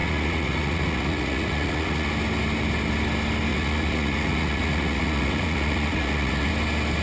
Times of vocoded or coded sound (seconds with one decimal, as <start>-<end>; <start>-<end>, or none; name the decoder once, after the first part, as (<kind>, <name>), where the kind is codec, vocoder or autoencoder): 0.0-2.1 (vocoder, Vocos); 3.5-6.5